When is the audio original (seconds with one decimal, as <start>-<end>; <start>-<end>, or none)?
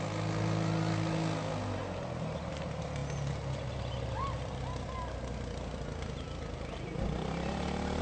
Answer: 0.0-8.0